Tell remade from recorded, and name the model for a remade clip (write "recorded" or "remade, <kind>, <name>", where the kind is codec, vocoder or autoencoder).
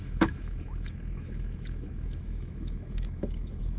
remade, autoencoder, DAC-VAE